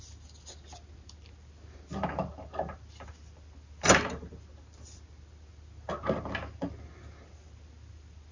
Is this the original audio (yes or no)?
yes